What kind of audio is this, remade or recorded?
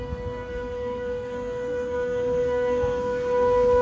remade